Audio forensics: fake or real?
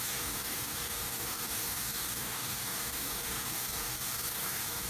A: fake